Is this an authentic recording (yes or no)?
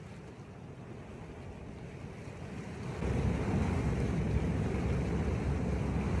yes